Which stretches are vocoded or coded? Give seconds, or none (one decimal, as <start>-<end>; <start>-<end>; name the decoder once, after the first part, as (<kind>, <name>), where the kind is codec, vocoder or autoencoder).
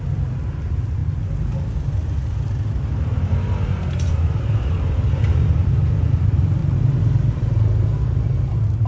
0.0-1.0 (vocoder, BigVGAN v2); 4.1-6.6; 7.3-8.9